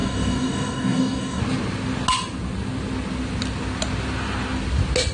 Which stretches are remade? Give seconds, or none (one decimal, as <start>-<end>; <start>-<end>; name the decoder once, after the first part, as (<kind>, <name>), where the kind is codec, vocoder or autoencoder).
0.0-1.4 (codec, DAC)